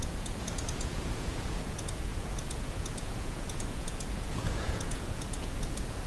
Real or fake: fake